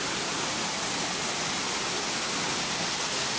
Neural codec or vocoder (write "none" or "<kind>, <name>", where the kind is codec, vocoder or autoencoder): none